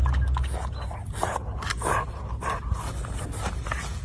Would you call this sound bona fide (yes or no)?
yes